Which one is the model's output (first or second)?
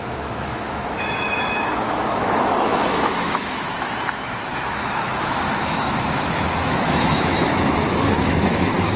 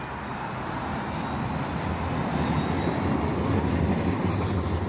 first